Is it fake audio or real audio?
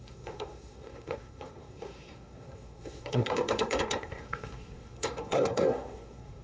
fake